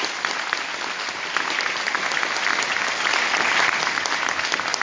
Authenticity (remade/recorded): recorded